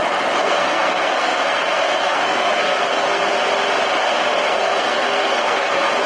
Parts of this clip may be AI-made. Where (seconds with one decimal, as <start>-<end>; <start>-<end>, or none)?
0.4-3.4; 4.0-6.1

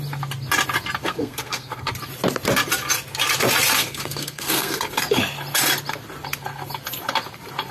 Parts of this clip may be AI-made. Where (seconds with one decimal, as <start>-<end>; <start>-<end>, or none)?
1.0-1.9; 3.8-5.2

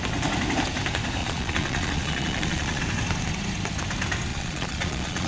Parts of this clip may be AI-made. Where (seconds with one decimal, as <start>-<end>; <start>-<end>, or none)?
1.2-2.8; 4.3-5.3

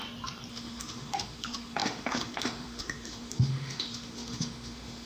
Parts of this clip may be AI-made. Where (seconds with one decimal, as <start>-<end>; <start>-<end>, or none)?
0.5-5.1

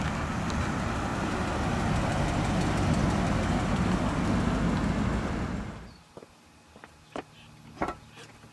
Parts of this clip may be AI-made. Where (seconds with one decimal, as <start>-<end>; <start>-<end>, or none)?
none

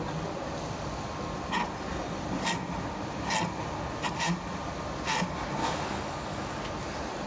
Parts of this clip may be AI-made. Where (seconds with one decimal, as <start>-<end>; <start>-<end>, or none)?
5.6-6.6